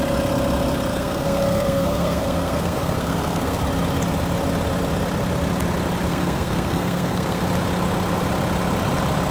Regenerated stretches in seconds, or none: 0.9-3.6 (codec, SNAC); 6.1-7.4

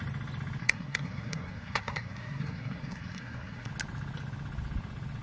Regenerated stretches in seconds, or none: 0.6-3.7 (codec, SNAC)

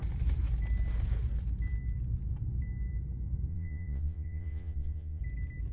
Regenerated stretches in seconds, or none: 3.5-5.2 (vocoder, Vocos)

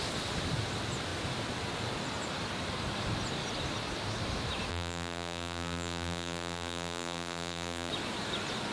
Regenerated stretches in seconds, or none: 4.7-7.9 (vocoder, BigVGAN v2)

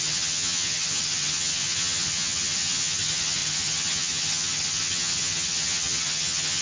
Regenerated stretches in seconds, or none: 0.0-6.6 (vocoder, HiFi-GAN)

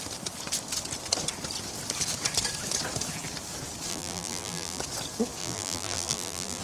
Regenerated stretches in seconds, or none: 3.9-4.8 (vocoder, BigVGAN v2); 5.4-6.6